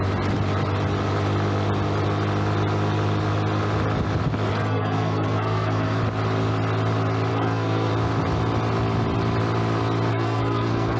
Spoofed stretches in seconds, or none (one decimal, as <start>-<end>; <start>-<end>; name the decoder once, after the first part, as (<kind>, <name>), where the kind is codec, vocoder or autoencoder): 4.5-6.0 (codec, SNAC); 7.3-7.9; 10.1-11.0